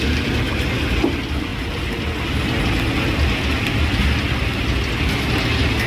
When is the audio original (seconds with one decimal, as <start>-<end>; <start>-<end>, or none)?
0.0-5.9